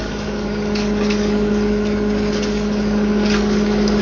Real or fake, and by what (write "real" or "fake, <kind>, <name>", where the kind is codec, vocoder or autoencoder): fake, codec, DAC